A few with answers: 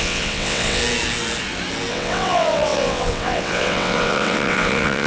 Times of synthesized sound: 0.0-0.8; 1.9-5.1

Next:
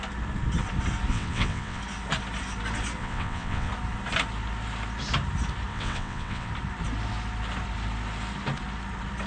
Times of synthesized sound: 1.1-1.8; 3.0-3.7; 5.7-6.5

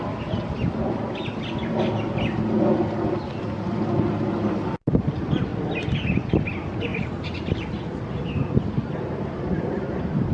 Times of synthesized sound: none

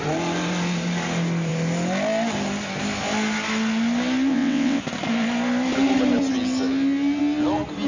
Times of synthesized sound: 4.3-4.8

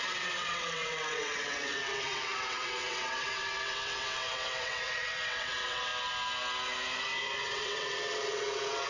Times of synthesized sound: 0.0-5.9; 7.2-8.9

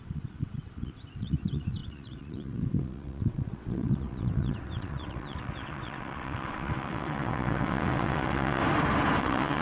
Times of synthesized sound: 0.0-8.6; 9.2-9.6

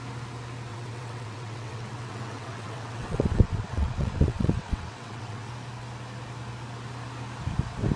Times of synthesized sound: 0.7-5.5

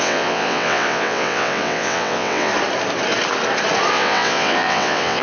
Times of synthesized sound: 0.0-2.5; 3.9-5.2